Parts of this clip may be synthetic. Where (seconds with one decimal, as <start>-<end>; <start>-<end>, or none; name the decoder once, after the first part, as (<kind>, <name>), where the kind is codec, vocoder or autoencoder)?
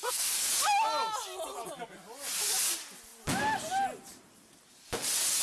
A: 0.0-0.5 (codec, SNAC)